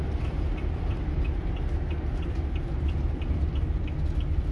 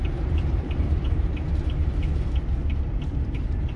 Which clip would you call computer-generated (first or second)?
second